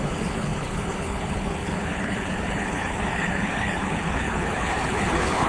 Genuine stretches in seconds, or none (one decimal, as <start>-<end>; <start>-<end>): none